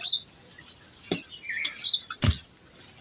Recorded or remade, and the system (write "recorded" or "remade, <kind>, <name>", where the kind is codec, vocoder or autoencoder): recorded